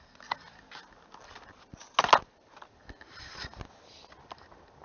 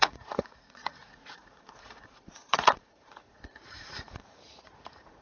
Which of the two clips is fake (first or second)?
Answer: second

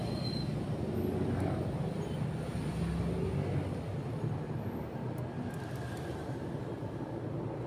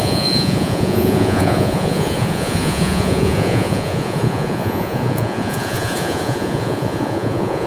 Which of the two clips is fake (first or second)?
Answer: second